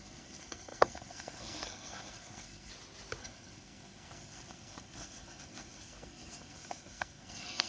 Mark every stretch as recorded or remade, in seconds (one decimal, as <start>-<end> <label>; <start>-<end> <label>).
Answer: 0.0-2.7 remade; 2.7-3.2 recorded; 3.2-7.7 remade